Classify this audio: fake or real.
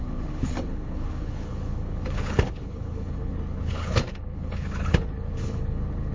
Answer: fake